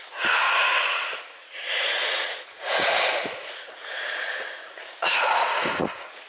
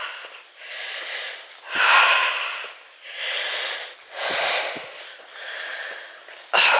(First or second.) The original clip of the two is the second